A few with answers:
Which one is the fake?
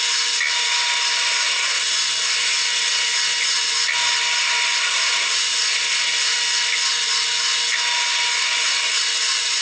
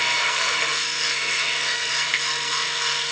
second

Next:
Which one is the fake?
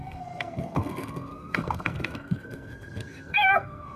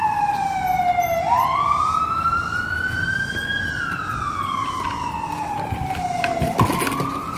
first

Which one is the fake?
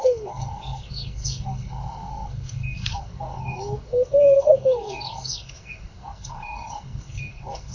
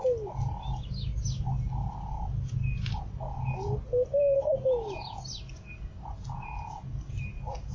first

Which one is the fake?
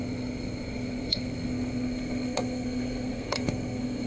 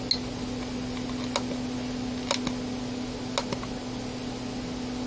first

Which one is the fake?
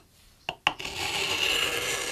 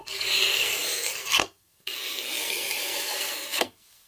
second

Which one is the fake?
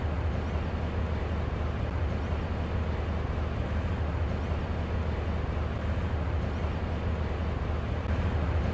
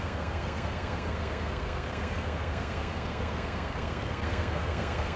second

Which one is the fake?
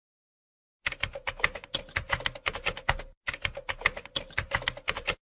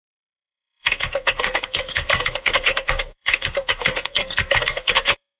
second